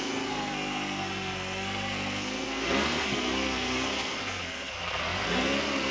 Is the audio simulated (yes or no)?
yes